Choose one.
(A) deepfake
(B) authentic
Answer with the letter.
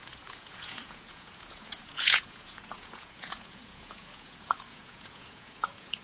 A